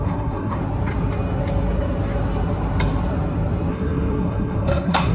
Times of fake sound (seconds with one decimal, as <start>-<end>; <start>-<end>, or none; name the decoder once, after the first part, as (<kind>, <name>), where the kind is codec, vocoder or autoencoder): 0.0-0.6 (codec, SNAC); 3.7-5.1